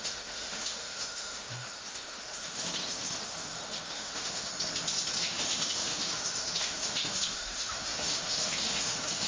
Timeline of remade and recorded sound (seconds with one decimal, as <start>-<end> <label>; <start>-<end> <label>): 0.0-4.5 remade; 4.5-5.2 recorded; 5.2-9.3 remade